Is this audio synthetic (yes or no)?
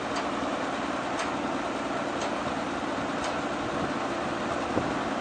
no